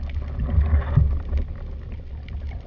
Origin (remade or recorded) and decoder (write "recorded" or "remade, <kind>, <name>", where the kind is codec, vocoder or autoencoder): recorded